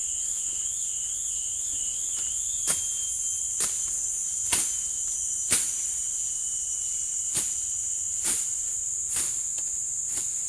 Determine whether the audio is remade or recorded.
recorded